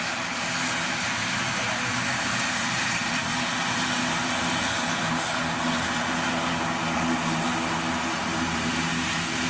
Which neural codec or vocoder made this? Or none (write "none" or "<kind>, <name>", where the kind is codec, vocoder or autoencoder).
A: none